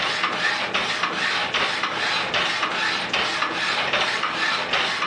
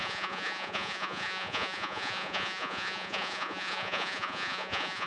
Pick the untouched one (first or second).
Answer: first